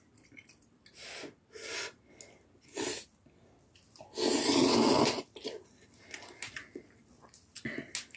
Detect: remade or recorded recorded